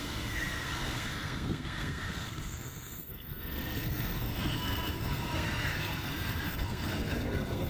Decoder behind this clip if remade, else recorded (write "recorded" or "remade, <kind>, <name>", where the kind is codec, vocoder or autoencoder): remade, codec, SNAC